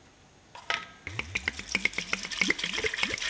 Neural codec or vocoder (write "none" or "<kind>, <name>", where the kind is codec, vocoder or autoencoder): none